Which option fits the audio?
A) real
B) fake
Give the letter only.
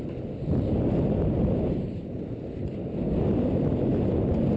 A